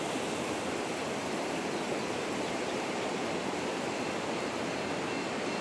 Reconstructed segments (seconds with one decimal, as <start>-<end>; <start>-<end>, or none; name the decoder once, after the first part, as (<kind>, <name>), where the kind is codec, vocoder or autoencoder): none